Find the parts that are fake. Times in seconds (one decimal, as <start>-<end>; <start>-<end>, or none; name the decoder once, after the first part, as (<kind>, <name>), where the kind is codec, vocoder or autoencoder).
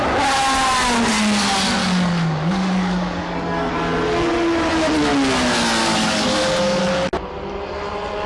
1.8-3.7 (codec, DAC); 5.8-6.8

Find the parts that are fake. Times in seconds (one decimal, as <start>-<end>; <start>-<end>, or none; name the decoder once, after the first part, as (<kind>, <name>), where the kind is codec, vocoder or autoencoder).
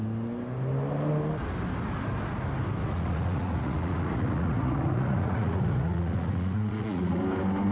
2.8-7.2 (vocoder, Vocos)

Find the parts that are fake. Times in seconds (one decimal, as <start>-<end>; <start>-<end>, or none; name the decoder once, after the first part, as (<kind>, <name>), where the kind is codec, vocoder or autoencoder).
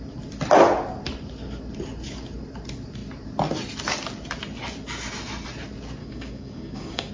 6.0-7.1 (codec, DAC)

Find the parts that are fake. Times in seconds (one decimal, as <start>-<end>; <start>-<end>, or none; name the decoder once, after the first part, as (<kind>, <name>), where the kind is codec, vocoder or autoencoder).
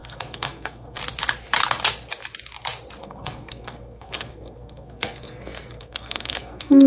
0.0-1.0 (codec, SNAC); 3.0-6.9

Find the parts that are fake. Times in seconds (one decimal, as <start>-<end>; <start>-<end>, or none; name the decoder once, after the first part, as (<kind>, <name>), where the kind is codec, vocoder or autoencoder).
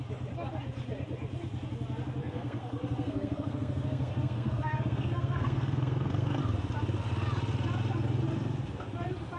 2.2-6.4 (codec, SNAC)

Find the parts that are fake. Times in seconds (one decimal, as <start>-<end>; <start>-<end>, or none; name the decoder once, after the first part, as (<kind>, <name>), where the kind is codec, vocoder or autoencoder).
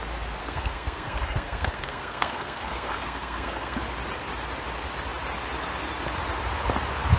0.4-3.8 (codec, SNAC)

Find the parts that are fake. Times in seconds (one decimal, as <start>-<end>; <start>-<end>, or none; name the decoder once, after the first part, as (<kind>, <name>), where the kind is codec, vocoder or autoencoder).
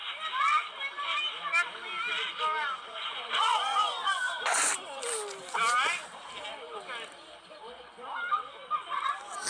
2.6-4.7 (vocoder, Vocos)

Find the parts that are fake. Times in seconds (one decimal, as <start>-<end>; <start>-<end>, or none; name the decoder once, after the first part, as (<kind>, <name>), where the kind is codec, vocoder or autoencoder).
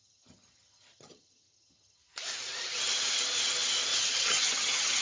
0.0-2.0 (vocoder, HiFi-GAN); 4.0-5.0